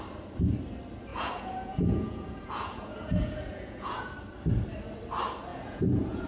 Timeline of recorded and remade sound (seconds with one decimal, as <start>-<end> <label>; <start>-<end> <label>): 0.0-1.1 recorded; 1.1-4.1 remade; 4.1-5.5 recorded; 5.5-6.3 remade